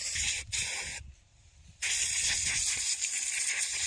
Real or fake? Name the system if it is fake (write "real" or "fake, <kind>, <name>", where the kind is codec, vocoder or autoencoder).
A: real